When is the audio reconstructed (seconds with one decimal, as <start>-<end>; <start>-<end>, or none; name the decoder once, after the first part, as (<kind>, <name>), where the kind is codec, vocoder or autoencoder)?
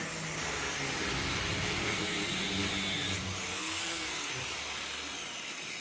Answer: 1.8-2.3 (codec, SNAC); 3.5-4.3